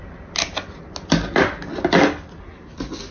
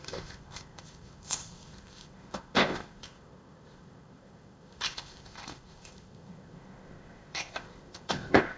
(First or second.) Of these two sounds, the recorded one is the first